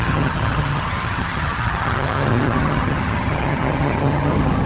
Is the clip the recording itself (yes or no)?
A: no